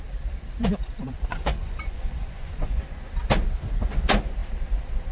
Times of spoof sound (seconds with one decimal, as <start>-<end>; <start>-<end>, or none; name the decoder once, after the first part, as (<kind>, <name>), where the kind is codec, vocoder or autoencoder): 1.3-2.8 (vocoder, Vocos)